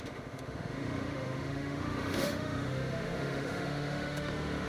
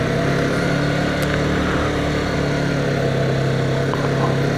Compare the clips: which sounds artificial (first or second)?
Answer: first